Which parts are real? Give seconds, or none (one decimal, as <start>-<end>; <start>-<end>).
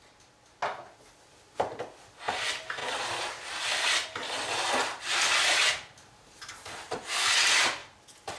0.0-8.4